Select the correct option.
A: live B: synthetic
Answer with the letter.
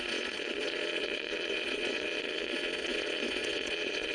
B